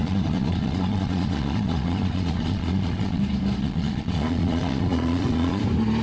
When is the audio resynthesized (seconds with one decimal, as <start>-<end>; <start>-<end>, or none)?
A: 0.0-3.2; 3.6-5.6